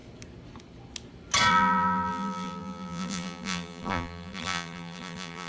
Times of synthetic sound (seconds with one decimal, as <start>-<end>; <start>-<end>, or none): 1.5-5.5